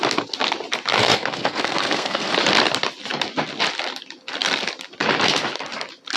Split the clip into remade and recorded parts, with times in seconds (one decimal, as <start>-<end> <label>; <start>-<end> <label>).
0.0-1.0 recorded; 1.0-2.3 remade; 2.3-6.2 recorded

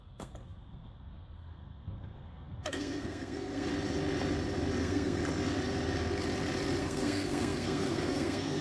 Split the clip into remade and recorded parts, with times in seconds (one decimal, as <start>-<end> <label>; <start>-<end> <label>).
0.0-3.7 remade; 3.7-4.8 recorded; 4.8-5.2 remade; 5.2-6.8 recorded; 6.8-8.6 remade

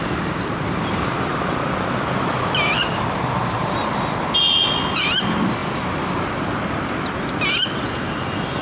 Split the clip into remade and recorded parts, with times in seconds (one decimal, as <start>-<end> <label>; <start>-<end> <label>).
0.0-8.6 recorded

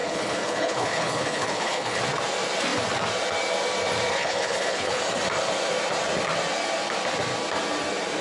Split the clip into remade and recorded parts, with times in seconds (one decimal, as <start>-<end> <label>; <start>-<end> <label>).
0.0-2.0 remade; 2.0-4.1 recorded; 4.1-5.0 remade; 5.0-8.2 recorded

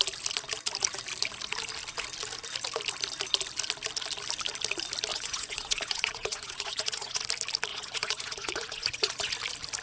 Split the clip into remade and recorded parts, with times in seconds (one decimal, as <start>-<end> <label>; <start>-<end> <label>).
0.0-5.1 recorded; 5.1-7.2 remade; 7.2-7.7 recorded; 7.7-9.3 remade; 9.3-9.8 recorded

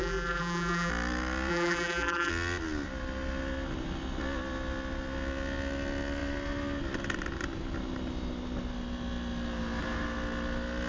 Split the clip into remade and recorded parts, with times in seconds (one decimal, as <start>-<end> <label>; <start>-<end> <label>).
0.0-0.9 remade; 0.9-1.5 recorded; 1.5-2.3 remade; 2.3-10.9 recorded

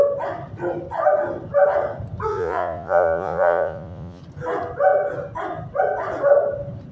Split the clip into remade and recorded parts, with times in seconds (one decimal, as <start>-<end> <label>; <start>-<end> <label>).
0.0-2.3 recorded; 2.3-4.2 remade; 4.2-6.9 recorded